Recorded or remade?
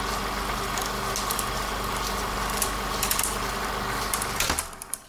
recorded